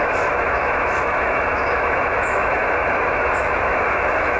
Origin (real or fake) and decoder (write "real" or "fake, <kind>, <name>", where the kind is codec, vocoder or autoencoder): fake, autoencoder, DAC-VAE